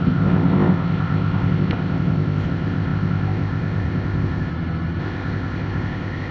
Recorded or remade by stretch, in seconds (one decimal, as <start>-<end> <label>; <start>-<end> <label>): 0.0-4.5 remade; 4.5-5.0 recorded; 5.0-6.3 remade